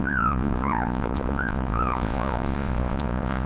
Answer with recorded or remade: remade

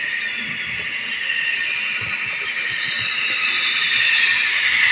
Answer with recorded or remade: recorded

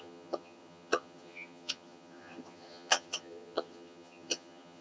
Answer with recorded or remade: remade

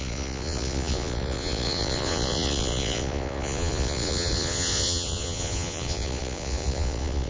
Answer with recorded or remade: remade